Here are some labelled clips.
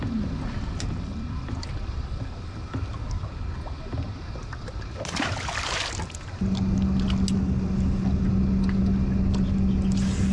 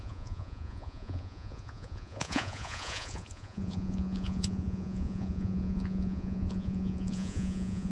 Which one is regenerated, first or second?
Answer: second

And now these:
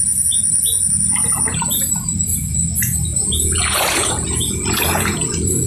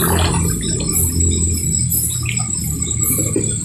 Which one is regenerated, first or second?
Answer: first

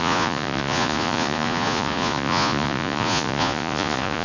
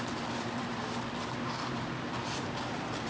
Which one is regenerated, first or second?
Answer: first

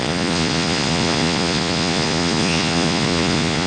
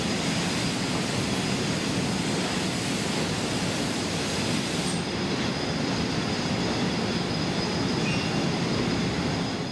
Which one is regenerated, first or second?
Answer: first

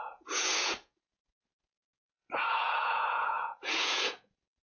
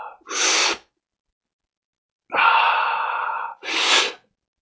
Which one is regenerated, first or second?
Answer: first